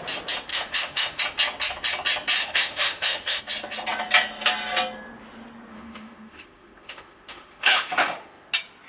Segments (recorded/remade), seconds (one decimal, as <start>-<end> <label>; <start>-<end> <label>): 0.0-0.5 recorded; 0.5-1.2 remade; 1.2-2.4 recorded; 2.4-3.4 remade; 3.4-5.7 recorded; 5.7-8.5 remade; 8.5-8.9 recorded